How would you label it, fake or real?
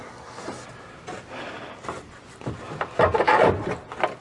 real